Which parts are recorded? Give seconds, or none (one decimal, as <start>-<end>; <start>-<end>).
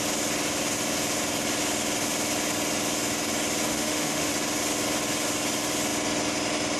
0.0-3.7; 4.3-6.8